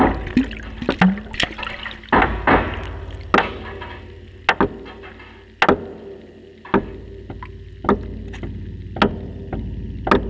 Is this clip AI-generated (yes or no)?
no